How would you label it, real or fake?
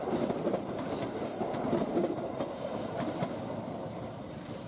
real